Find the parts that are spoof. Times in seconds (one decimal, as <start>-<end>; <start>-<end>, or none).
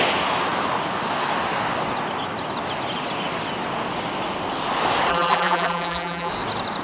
5.1-6.3